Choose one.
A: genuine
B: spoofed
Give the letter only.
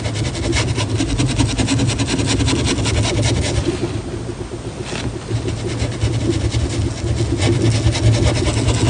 A